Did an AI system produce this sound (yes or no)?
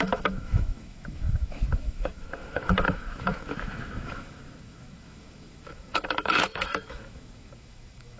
yes